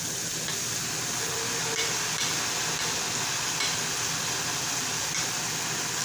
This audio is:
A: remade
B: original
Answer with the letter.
B